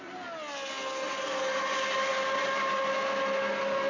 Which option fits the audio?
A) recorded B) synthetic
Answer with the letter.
A